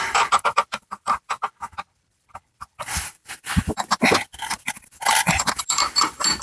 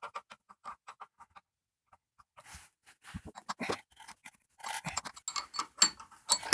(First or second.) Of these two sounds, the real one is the second